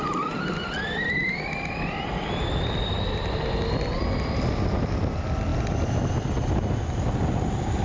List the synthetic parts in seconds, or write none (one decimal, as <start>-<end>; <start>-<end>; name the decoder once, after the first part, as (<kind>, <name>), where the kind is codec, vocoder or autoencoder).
none